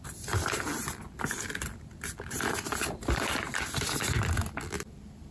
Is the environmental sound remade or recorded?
remade